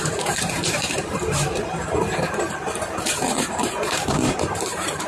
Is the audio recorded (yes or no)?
no